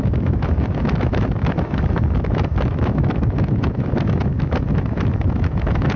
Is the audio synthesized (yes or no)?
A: yes